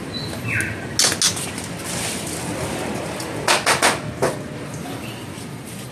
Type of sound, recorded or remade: recorded